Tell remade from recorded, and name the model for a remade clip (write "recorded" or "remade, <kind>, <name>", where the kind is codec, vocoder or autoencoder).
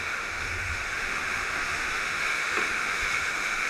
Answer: remade, autoencoder, DAC-VAE